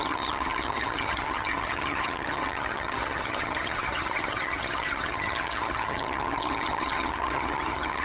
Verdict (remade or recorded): remade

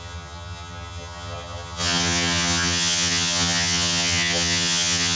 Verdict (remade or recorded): remade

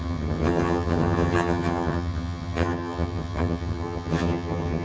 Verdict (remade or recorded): remade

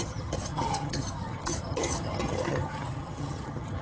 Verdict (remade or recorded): remade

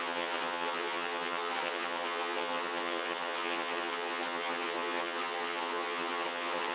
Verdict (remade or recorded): remade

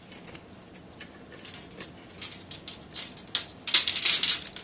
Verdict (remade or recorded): recorded